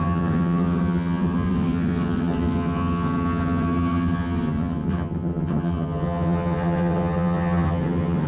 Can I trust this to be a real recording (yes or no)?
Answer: no